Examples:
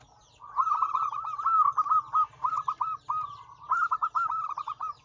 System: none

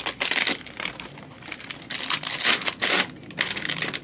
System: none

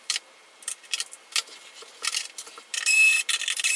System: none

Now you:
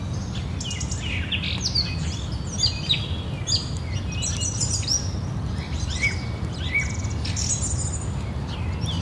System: none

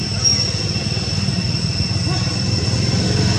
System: none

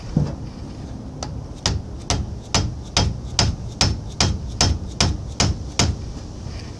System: none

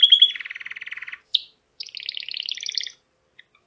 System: none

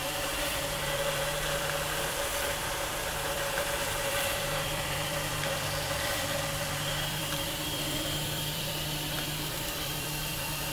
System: vocoder, BigVGAN v2